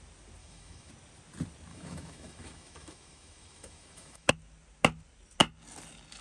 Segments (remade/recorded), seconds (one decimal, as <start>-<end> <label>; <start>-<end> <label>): 0.0-0.4 recorded; 0.4-0.9 remade; 0.9-1.7 recorded; 1.7-4.3 remade; 4.3-6.2 recorded